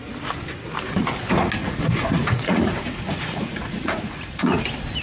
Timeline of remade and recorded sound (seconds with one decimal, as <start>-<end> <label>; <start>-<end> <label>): 0.0-1.6 recorded; 1.6-4.6 remade; 4.6-5.0 recorded